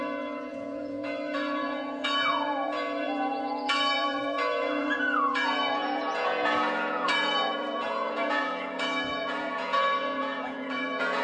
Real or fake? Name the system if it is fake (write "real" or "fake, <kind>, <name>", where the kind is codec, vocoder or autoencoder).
fake, vocoder, Vocos